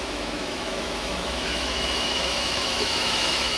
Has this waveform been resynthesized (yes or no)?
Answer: yes